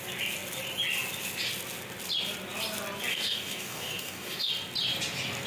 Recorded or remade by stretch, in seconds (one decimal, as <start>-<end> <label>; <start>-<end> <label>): 0.0-3.1 recorded; 3.1-4.5 remade; 4.5-5.5 recorded